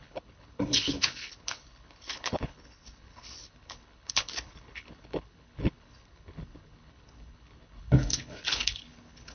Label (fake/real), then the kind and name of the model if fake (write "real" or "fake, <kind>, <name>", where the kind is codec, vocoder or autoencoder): fake, codec, HILCodec